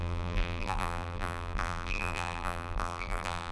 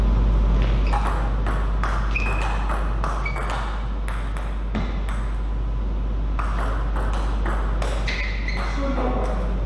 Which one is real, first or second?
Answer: second